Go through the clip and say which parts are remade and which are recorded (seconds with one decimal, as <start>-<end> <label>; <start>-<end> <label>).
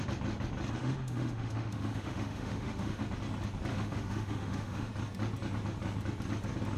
0.0-0.8 recorded; 0.8-3.0 remade; 3.0-3.7 recorded; 3.7-4.9 remade; 4.9-6.8 recorded